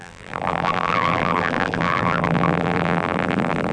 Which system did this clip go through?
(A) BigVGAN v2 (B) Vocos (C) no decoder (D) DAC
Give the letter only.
A